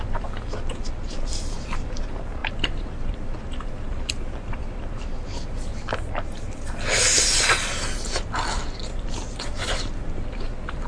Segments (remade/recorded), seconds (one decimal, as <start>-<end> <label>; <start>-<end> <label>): 0.0-5.7 remade; 5.7-6.7 recorded; 6.7-10.9 remade